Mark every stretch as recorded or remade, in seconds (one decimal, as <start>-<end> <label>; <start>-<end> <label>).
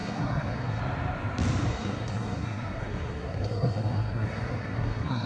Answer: 0.0-0.8 remade; 0.8-1.7 recorded; 1.7-5.3 remade